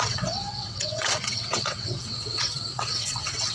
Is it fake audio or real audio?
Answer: fake